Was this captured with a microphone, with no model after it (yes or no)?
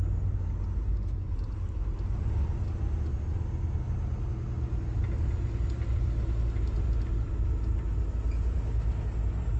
yes